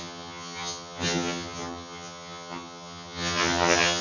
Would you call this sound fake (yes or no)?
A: yes